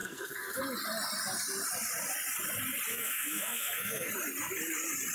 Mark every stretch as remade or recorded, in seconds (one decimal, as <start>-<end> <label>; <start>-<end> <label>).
0.0-0.6 remade; 0.6-2.9 recorded; 2.9-4.1 remade; 4.1-5.1 recorded